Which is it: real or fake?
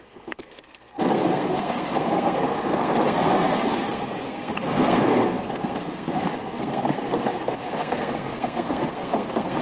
fake